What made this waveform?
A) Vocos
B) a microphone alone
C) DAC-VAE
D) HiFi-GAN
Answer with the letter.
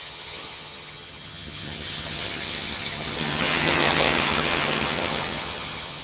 D